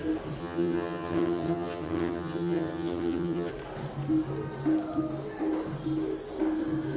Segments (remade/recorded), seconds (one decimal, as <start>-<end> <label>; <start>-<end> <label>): 0.0-0.4 recorded; 0.4-3.5 remade; 3.5-7.0 recorded